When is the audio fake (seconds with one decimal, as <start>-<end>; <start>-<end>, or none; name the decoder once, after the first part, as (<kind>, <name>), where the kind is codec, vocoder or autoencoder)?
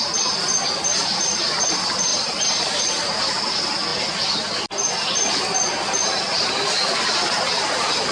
2.1-3.4 (vocoder, BigVGAN v2)